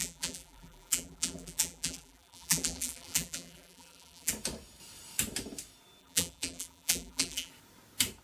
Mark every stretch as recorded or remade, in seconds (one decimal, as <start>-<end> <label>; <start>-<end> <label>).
0.0-4.3 remade; 4.3-6.0 recorded; 6.0-7.5 remade; 7.5-8.2 recorded